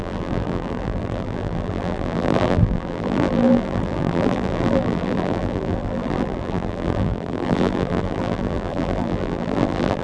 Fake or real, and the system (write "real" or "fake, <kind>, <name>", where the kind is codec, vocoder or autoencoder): fake, vocoder, BigVGAN v2